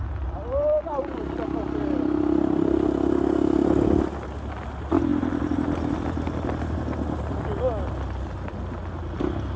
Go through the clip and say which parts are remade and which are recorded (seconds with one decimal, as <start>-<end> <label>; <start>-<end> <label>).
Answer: 0.0-9.6 recorded